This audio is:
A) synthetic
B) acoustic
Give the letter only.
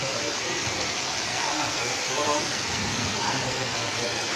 A